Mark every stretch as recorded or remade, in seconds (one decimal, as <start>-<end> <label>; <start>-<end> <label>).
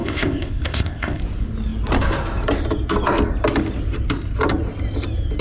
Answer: 0.0-1.2 remade; 1.2-5.4 recorded